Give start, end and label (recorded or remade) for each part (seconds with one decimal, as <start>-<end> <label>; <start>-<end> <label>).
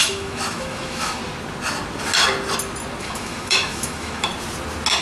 0.0-1.2 remade; 1.2-3.0 recorded; 3.0-4.3 remade; 4.3-5.0 recorded